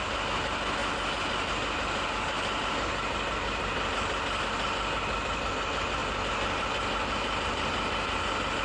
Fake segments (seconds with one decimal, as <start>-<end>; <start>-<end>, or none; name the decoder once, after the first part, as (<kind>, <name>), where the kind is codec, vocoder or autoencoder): none